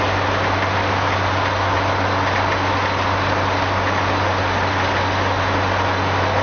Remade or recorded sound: recorded